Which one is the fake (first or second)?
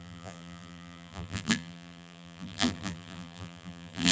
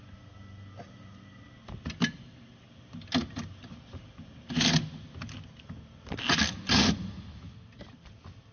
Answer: first